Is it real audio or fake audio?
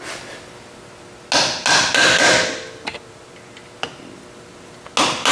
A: real